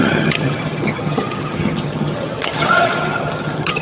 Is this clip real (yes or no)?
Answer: no